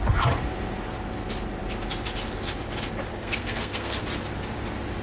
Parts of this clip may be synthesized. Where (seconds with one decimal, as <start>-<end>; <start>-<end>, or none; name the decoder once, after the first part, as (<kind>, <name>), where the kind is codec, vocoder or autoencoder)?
3.1-4.0 (codec, SNAC)